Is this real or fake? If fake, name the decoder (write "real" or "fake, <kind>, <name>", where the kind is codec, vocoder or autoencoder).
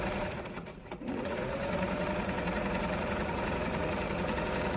fake, vocoder, Vocos